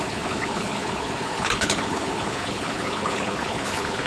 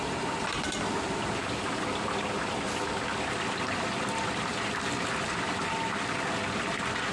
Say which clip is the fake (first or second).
first